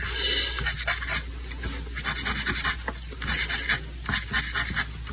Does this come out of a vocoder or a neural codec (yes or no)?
no